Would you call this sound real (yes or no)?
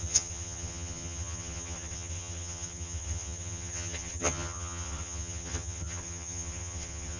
no